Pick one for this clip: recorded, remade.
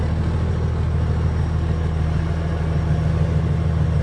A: recorded